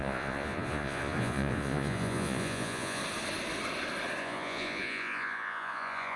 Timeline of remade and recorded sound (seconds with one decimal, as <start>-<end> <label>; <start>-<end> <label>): 0.0-3.0 remade; 3.0-4.2 recorded; 4.2-6.2 remade